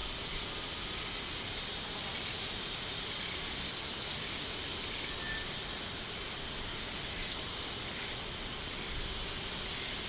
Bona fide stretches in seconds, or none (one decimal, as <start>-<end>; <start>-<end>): 0.0-10.1

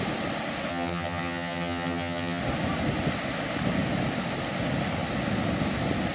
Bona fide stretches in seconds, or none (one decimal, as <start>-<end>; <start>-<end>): 0.0-0.7; 2.4-6.1

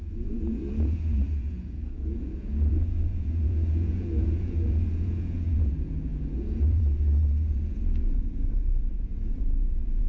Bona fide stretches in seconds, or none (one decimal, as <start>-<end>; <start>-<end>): none